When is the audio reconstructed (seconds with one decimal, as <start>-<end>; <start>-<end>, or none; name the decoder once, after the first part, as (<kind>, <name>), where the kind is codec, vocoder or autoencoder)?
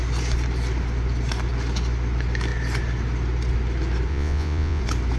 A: 4.1-4.8 (vocoder, Vocos)